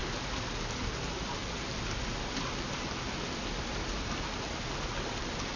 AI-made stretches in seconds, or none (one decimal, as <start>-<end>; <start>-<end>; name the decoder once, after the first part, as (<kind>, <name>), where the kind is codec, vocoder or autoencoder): none